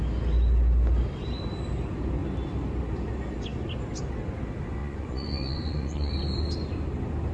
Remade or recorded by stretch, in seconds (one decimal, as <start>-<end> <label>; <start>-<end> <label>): 0.0-4.8 recorded; 4.8-6.1 remade; 6.1-7.3 recorded